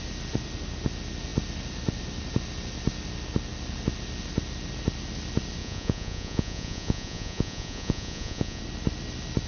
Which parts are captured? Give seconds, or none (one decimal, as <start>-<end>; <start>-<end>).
0.0-5.6; 8.6-9.5